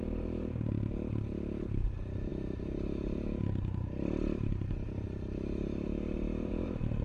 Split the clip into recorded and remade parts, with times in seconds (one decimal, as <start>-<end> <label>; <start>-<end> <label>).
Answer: 0.0-0.5 remade; 0.5-1.6 recorded; 1.6-7.0 remade